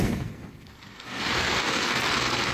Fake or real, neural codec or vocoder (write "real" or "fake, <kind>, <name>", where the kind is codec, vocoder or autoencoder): fake, codec, SNAC